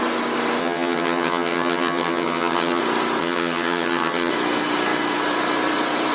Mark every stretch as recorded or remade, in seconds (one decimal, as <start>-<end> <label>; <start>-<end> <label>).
0.0-0.6 recorded; 0.6-2.8 remade; 2.8-3.2 recorded; 3.2-4.3 remade; 4.3-6.1 recorded